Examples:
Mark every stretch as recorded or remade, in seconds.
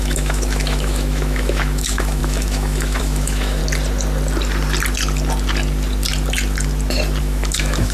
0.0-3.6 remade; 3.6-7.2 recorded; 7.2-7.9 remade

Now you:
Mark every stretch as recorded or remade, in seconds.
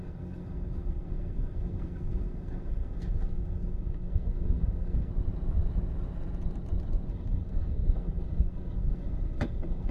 0.0-5.1 remade; 5.1-7.1 recorded; 7.1-9.9 remade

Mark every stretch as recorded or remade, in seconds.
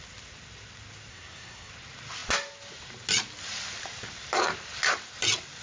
0.0-1.1 recorded; 1.1-1.7 remade; 1.7-5.6 recorded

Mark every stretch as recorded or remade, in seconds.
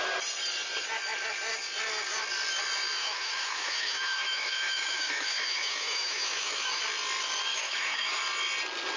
0.0-3.0 recorded; 3.0-6.8 remade; 6.8-7.5 recorded; 7.5-8.2 remade; 8.2-9.0 recorded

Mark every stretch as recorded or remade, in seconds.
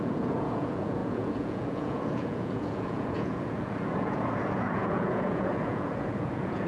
0.0-6.7 remade